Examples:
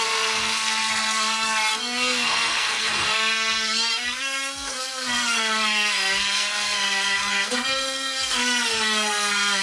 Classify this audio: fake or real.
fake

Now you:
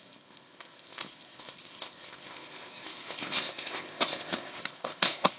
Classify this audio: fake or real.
fake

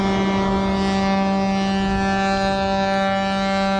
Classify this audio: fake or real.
real